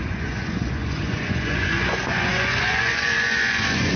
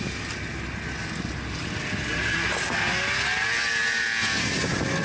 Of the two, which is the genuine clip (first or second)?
second